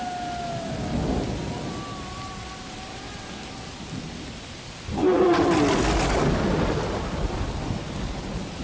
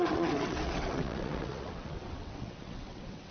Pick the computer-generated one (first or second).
second